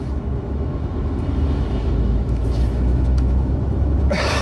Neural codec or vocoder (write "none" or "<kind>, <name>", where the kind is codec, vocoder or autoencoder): autoencoder, DAC-VAE